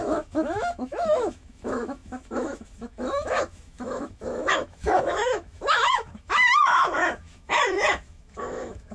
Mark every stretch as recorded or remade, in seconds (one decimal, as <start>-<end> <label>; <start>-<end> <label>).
0.0-8.9 remade